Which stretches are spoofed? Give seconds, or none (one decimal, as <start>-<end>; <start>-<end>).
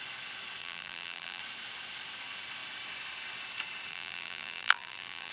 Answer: 0.6-1.4; 3.9-5.3